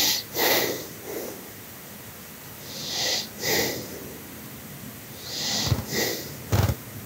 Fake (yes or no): no